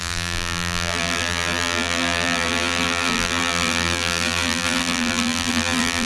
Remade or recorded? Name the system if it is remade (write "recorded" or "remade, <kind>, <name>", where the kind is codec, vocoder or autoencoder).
remade, vocoder, BigVGAN v2